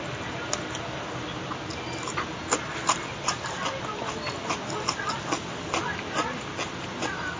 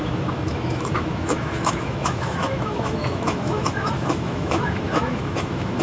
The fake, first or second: second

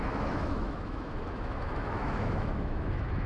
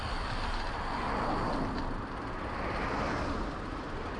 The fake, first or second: first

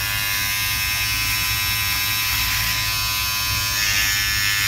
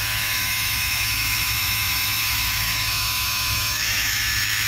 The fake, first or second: second